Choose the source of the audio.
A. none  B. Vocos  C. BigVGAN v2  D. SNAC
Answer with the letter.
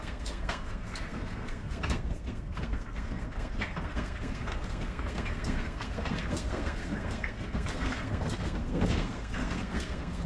D